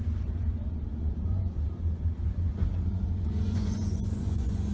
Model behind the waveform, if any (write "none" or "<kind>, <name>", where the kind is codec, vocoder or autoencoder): vocoder, Vocos